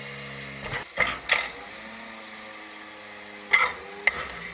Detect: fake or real real